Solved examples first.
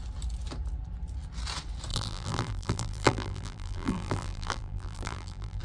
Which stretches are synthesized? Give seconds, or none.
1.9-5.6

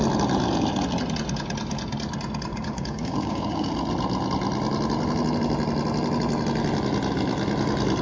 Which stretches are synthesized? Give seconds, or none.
2.5-3.7

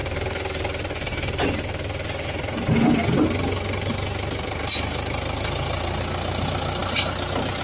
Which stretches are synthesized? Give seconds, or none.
none